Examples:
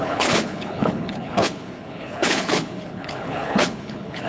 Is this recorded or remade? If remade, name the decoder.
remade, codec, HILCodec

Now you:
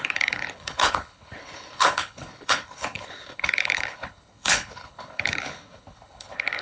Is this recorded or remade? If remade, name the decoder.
remade, codec, HILCodec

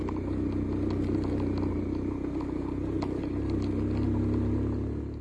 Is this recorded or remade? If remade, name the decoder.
recorded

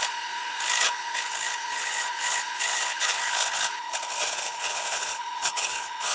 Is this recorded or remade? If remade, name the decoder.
remade, codec, HILCodec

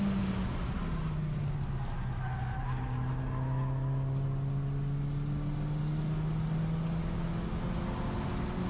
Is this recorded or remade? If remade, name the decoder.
recorded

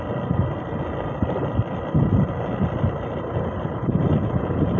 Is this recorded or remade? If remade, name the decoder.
recorded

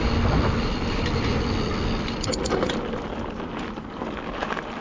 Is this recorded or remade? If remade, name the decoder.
recorded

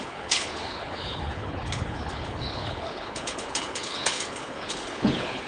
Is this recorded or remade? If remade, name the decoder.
remade, codec, HILCodec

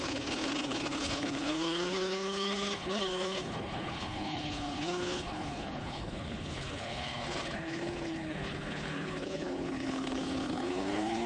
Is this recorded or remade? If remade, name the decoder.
remade, codec, HILCodec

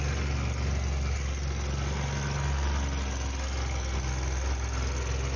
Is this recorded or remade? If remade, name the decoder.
recorded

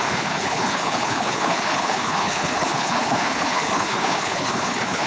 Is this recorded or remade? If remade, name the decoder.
remade, codec, HILCodec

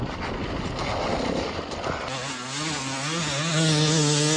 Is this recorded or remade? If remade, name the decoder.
recorded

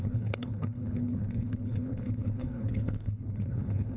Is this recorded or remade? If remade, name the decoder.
remade, codec, HILCodec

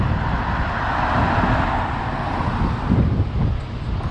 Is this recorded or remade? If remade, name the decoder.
recorded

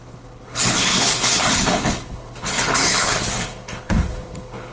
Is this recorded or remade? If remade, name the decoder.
remade, codec, HILCodec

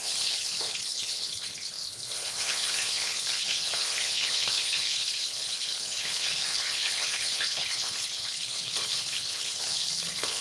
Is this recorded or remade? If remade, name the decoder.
remade, codec, HILCodec